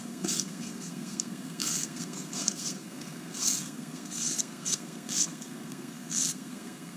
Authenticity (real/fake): fake